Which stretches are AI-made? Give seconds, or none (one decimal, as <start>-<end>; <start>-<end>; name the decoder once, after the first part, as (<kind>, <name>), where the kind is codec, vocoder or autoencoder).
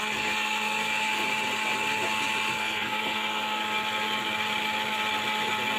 0.0-0.9 (codec, SNAC); 2.5-3.6